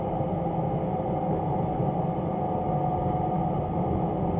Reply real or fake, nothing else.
real